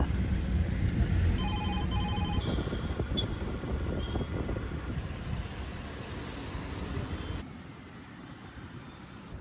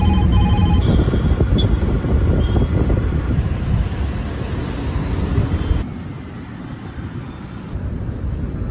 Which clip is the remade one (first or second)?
first